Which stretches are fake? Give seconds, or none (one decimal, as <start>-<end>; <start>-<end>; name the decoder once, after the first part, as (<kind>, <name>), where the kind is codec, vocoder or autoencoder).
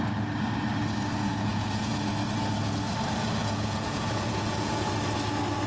1.3-2.1 (vocoder, Vocos); 3.4-4.9